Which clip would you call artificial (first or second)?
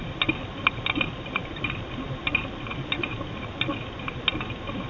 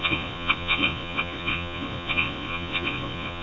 second